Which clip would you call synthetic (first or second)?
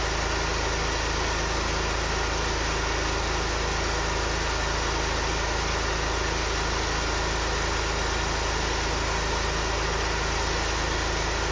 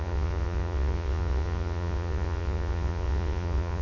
second